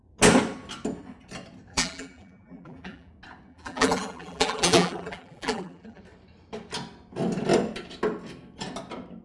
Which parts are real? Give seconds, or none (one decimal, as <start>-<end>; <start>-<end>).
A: 0.0-1.7; 3.1-3.5; 6.0-9.2